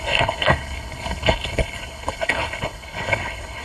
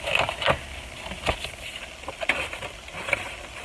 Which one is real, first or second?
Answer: second